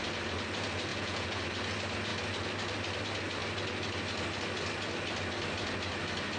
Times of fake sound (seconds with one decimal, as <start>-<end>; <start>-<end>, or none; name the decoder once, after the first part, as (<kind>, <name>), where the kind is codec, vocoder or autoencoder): 0.9-1.4 (vocoder, Vocos)